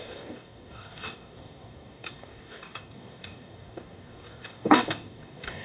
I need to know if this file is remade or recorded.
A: remade